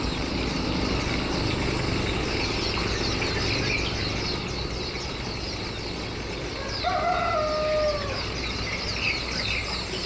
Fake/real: real